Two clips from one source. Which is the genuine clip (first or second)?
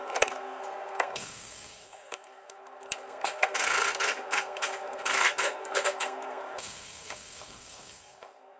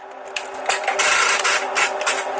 second